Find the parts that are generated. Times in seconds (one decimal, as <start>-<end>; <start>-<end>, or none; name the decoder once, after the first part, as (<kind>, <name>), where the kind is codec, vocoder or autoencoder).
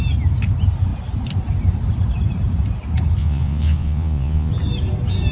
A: 3.2-4.5 (vocoder, Vocos)